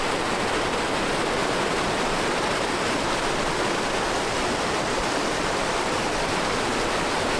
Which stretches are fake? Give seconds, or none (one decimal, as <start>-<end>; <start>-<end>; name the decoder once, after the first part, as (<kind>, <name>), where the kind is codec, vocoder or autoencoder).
1.4-2.6 (vocoder, BigVGAN v2); 4.4-6.0